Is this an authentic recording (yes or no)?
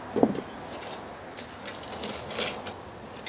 yes